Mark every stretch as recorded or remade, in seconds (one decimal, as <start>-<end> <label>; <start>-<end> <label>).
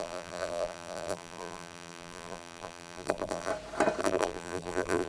0.0-3.5 remade; 3.5-4.0 recorded; 4.0-5.1 remade